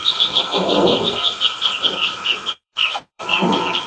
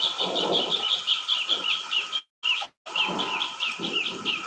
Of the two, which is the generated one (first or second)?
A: first